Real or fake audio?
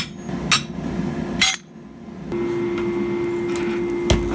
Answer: real